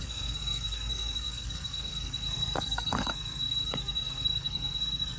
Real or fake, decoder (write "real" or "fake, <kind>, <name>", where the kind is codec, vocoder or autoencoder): fake, codec, SNAC